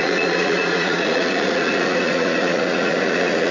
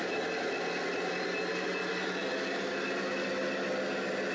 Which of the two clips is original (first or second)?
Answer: second